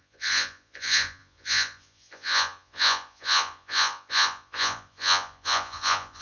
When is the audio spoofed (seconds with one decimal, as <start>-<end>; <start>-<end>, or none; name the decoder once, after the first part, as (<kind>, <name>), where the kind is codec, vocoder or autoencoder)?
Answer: 0.0-6.2 (vocoder, Vocos)